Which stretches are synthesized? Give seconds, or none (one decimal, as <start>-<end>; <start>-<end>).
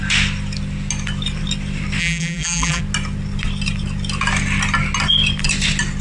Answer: 2.0-2.8